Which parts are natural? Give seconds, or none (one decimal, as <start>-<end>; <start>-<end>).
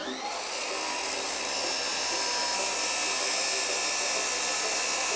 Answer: 0.0-5.2